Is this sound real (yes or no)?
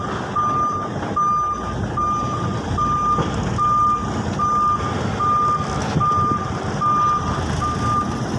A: yes